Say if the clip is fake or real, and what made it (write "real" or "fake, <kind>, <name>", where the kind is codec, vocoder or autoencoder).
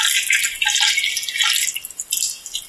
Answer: real